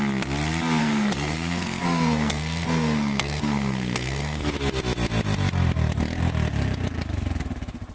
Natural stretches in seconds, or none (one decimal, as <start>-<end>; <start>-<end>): 0.0-0.8; 4.5-7.9